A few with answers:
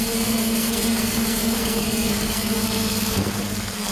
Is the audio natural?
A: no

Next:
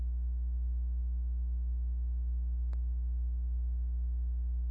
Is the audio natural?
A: yes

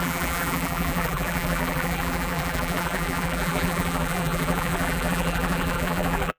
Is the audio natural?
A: no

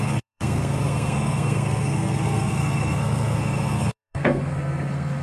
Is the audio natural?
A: no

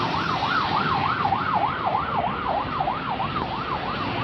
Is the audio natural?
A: yes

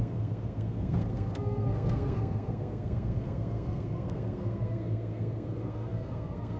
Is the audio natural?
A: no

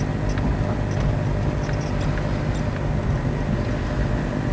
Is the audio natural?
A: yes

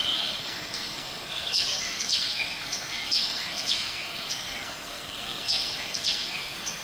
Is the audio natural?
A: no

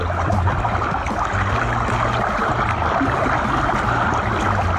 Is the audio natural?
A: yes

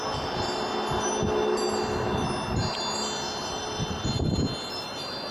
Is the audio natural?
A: yes